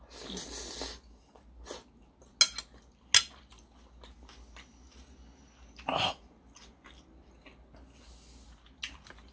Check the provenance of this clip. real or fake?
real